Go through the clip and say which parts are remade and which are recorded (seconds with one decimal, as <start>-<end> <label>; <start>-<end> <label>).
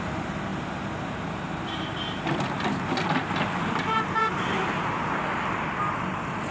0.0-0.5 recorded; 0.5-3.3 remade; 3.3-6.5 recorded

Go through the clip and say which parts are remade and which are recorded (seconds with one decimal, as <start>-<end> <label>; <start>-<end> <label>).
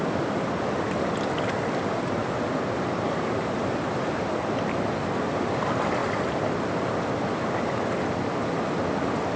0.0-2.2 recorded; 2.2-4.1 remade; 4.1-9.4 recorded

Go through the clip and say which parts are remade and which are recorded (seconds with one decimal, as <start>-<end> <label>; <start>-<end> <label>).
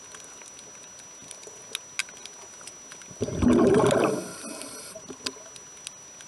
0.0-4.3 recorded; 4.3-5.2 remade; 5.2-6.3 recorded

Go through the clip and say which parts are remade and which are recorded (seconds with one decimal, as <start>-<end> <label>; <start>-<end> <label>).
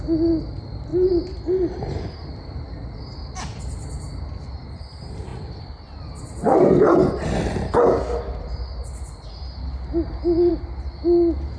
0.0-11.6 recorded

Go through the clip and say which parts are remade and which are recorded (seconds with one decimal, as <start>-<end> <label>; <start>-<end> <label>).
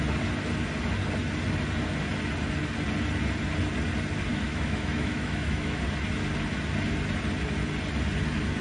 0.0-4.3 recorded; 4.3-5.8 remade; 5.8-8.6 recorded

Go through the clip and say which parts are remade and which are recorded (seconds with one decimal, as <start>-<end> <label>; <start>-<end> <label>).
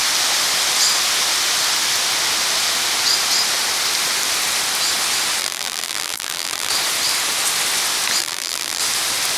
0.0-5.4 recorded; 5.4-6.7 remade; 6.7-8.2 recorded; 8.2-8.8 remade; 8.8-9.4 recorded